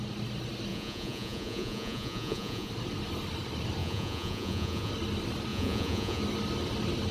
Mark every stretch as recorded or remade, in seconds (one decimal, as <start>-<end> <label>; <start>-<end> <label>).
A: 0.0-0.7 recorded; 0.7-2.7 remade; 2.7-3.8 recorded; 3.8-4.9 remade; 4.9-5.5 recorded; 5.5-6.2 remade; 6.2-7.1 recorded